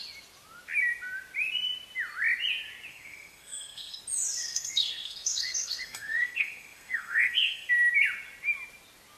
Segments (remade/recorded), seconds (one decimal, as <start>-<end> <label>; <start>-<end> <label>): 0.0-2.9 recorded; 2.9-4.0 remade; 4.0-4.4 recorded; 4.4-7.7 remade; 7.7-9.2 recorded